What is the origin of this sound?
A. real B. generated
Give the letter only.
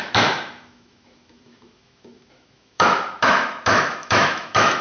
B